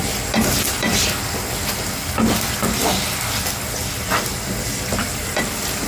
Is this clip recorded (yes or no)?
yes